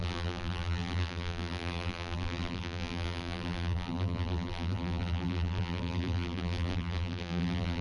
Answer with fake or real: fake